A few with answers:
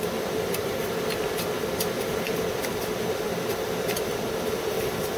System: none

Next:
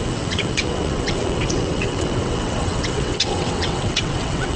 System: vocoder, WaveNeXt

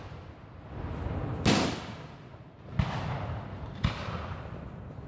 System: none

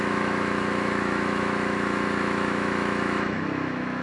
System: autoencoder, DAC-VAE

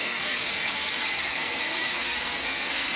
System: codec, SNAC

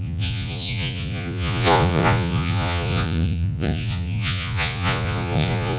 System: vocoder, Vocos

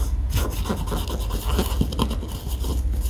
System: none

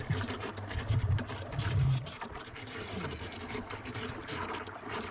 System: vocoder, BigVGAN v2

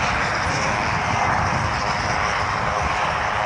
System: none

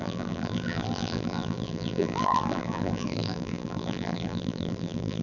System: vocoder, BigVGAN v2